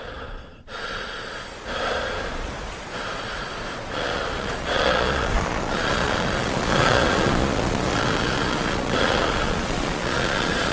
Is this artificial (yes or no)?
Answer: yes